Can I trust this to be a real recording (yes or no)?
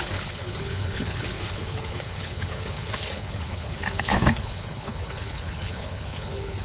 no